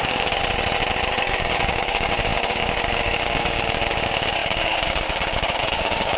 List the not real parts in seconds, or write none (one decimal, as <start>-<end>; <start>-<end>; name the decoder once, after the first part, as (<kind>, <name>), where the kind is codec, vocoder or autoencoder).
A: 0.0-0.4 (codec, DAC); 1.2-6.2